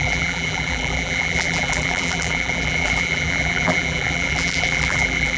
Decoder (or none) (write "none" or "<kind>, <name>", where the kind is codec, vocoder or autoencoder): vocoder, BigVGAN v2